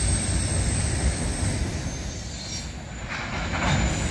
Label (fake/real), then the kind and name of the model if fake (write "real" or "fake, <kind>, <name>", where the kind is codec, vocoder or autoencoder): real